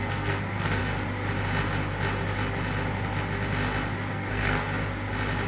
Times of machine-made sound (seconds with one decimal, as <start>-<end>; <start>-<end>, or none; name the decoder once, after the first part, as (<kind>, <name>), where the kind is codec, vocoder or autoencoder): 0.0-0.8 (codec, SNAC); 4.1-4.8